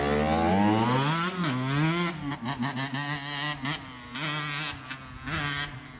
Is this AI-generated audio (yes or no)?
no